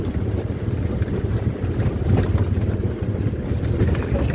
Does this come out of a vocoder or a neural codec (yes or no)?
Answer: no